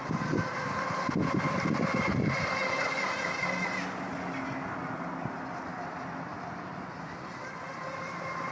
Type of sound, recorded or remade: recorded